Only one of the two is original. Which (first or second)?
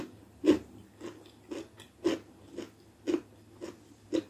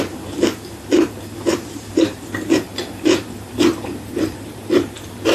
first